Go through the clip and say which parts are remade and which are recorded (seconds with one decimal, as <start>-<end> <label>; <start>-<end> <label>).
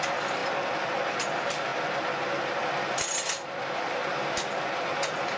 0.0-5.4 recorded